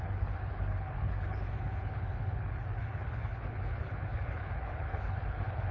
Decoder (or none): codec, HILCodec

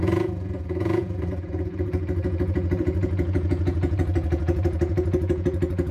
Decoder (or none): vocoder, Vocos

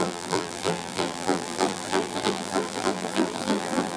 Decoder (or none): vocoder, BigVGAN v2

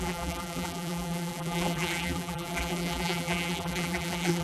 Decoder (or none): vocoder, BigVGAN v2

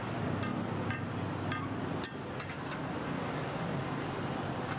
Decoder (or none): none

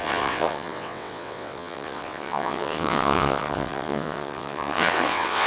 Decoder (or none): vocoder, WaveNeXt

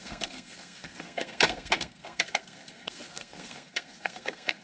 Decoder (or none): codec, SNAC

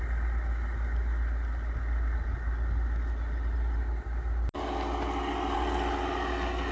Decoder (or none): none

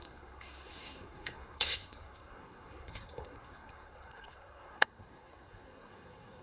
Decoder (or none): codec, SNAC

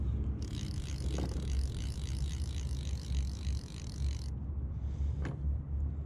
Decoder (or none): none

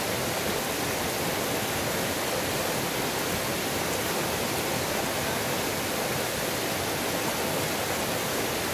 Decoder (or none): none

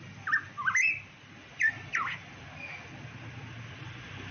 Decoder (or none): none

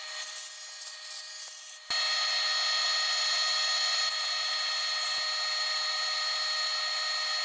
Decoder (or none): none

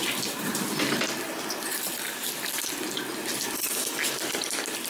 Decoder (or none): none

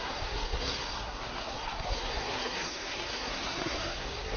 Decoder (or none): codec, SNAC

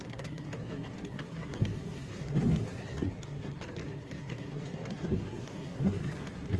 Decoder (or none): codec, SNAC